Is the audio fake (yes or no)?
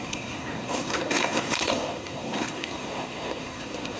yes